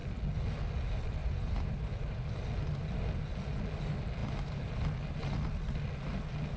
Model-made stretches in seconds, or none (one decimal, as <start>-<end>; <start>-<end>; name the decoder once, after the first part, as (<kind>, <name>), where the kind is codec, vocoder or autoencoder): 1.2-2.2 (vocoder, BigVGAN v2)